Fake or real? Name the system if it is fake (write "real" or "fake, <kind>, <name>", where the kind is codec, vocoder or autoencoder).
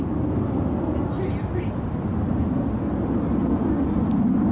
real